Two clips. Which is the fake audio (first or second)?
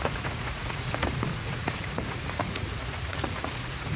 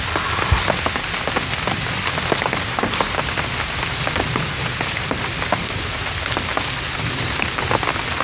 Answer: first